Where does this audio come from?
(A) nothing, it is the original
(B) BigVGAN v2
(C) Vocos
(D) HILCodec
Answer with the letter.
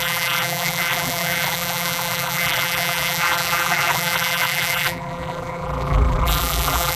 B